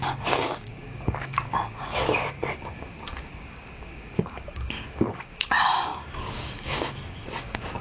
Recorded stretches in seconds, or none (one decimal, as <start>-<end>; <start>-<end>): none